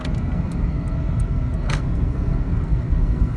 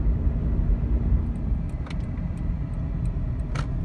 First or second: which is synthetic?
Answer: first